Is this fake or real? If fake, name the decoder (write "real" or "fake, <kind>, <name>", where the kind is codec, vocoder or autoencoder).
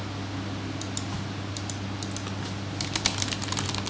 real